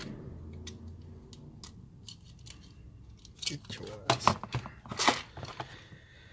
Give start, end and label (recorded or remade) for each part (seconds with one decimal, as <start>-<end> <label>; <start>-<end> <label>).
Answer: 0.0-6.3 recorded